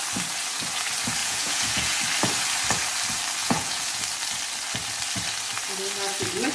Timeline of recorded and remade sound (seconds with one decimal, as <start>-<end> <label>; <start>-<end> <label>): 0.0-1.2 recorded; 1.2-2.0 remade; 2.0-3.4 recorded; 3.4-4.0 remade; 4.0-6.5 recorded

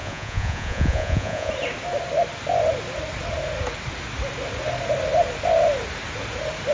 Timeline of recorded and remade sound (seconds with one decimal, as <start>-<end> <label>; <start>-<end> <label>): 0.0-1.5 remade; 1.5-6.7 recorded

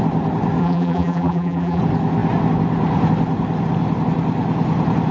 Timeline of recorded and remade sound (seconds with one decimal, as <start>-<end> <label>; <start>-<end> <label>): 0.0-0.6 recorded; 0.6-1.8 remade; 1.8-5.1 recorded

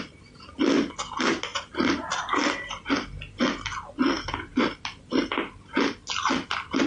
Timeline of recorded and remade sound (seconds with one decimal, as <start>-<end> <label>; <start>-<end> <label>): 0.0-1.5 recorded; 1.5-2.2 remade; 2.2-4.5 recorded; 4.5-5.7 remade; 5.7-6.9 recorded

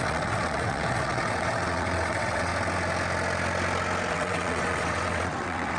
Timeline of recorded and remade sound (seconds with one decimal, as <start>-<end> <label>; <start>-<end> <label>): 0.0-2.5 remade; 2.5-4.1 recorded; 4.1-5.8 remade